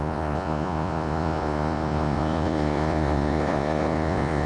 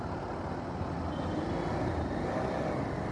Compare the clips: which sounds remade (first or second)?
first